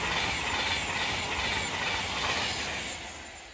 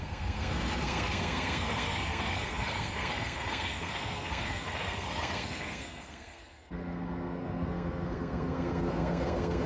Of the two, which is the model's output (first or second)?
second